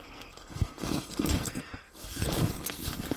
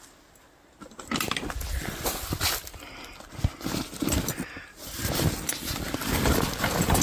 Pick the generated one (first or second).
first